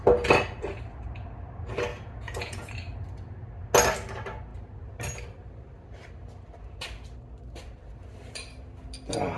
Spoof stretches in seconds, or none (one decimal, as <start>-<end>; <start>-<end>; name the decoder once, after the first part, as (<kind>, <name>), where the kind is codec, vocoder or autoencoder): 1.9-2.7 (vocoder, Vocos)